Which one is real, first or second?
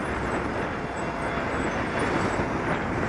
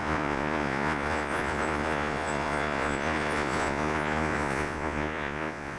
first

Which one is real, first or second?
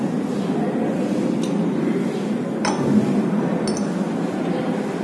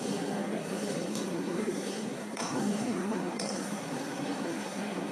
first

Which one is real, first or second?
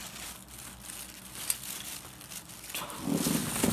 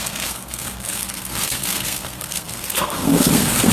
first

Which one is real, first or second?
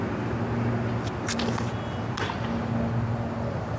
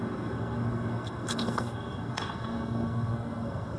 first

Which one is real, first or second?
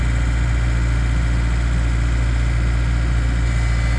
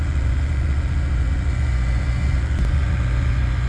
first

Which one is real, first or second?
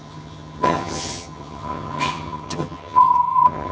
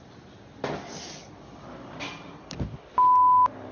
second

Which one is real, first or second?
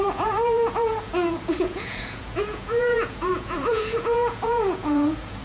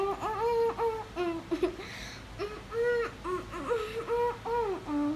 second